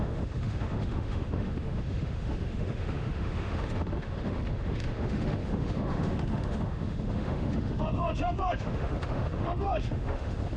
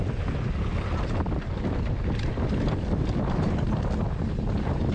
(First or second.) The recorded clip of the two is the second